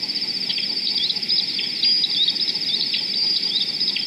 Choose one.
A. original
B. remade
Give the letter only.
A